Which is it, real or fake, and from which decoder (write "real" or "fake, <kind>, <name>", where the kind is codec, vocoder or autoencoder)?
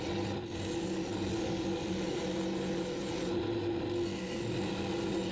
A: real